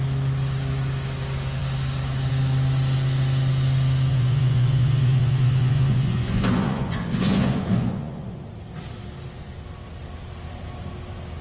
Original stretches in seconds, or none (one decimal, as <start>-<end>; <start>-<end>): 0.0-4.1; 8.4-11.4